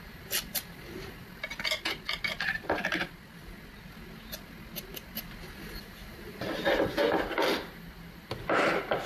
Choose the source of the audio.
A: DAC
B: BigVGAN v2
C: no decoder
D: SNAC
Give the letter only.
C